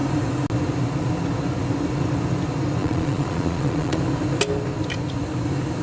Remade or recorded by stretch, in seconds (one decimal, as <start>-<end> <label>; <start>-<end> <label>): 0.0-2.8 recorded; 2.8-4.0 remade; 4.0-5.8 recorded